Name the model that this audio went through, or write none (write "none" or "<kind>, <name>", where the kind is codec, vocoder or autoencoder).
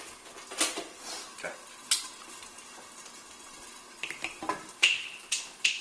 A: none